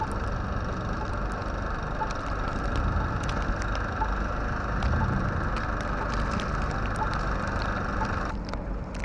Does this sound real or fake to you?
real